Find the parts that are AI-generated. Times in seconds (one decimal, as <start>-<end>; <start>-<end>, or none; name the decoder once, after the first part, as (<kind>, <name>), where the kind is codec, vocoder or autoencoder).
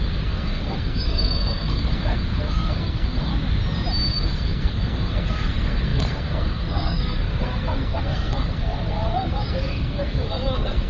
0.0-3.3 (codec, SNAC); 4.1-10.9